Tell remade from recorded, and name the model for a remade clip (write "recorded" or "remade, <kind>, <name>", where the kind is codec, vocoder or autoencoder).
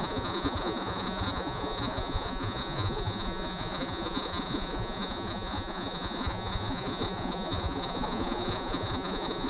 remade, vocoder, Vocos